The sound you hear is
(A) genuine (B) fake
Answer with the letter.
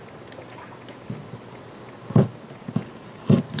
A